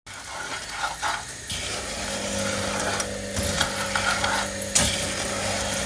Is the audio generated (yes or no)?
no